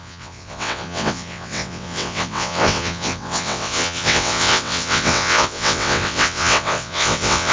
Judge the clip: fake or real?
fake